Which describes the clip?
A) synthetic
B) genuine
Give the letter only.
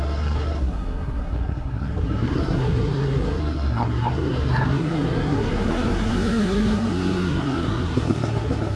A